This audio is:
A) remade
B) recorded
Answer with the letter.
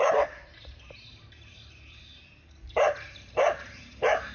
A